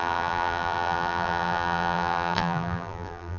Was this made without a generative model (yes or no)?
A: no